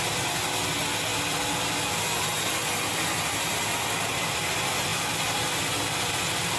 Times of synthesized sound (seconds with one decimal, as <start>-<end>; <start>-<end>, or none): none